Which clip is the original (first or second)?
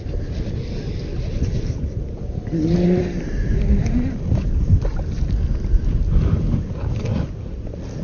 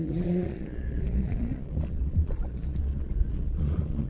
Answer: first